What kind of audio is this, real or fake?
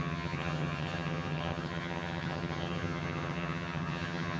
fake